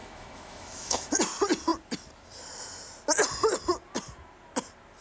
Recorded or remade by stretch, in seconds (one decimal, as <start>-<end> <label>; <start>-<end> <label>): 0.0-1.2 remade; 1.2-5.0 recorded